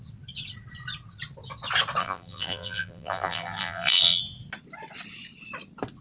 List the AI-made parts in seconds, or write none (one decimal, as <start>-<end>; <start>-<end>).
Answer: 2.0-4.2